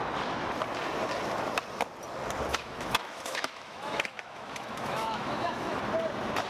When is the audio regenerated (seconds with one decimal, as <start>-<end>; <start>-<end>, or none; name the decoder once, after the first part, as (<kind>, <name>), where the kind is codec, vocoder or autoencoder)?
2.5-5.8 (autoencoder, DAC-VAE)